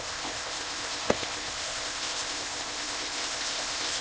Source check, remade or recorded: remade